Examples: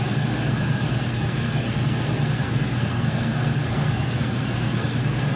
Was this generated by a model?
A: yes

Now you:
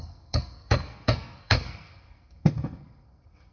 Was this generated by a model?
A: yes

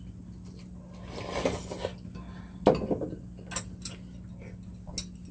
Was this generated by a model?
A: no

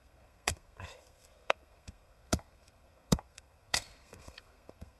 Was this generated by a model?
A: yes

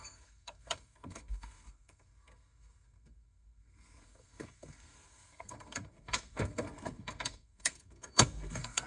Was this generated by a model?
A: yes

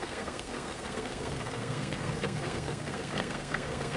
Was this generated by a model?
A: yes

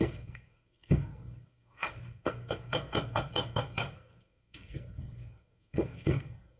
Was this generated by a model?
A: yes